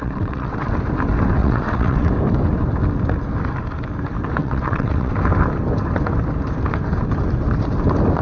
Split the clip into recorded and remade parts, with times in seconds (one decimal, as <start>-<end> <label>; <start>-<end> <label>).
0.0-0.7 remade; 0.7-1.4 recorded; 1.4-2.1 remade; 2.1-4.4 recorded; 4.4-5.1 remade; 5.1-8.2 recorded